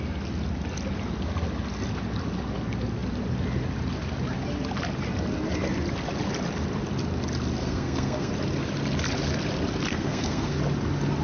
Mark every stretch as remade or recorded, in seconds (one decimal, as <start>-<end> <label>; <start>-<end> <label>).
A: 0.0-7.6 recorded; 7.6-8.3 remade; 8.3-9.9 recorded; 9.9-10.6 remade; 10.6-11.2 recorded